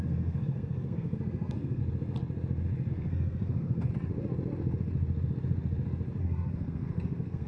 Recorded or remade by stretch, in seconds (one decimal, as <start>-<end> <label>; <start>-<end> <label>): 0.0-1.8 remade; 1.8-2.9 recorded; 2.9-3.9 remade; 3.9-6.2 recorded; 6.2-7.5 remade